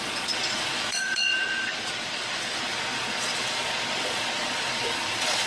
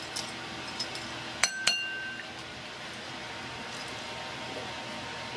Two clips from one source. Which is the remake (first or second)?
first